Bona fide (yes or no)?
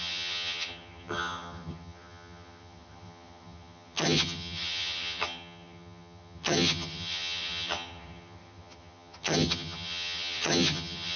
no